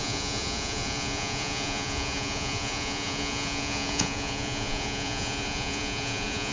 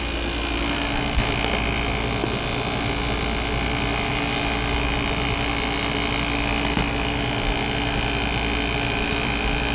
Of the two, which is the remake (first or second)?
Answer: first